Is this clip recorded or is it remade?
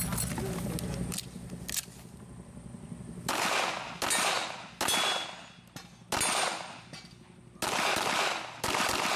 recorded